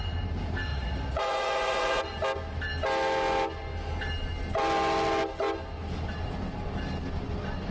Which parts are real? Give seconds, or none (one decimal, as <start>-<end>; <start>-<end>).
0.0-0.7; 2.0-7.7